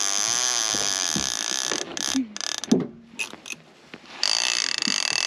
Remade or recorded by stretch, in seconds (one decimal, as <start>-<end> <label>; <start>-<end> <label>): 0.0-5.3 recorded